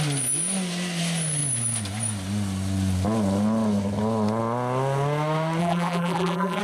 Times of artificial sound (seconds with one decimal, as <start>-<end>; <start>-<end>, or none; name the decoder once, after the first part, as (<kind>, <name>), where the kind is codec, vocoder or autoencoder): 5.6-6.6 (vocoder, BigVGAN v2)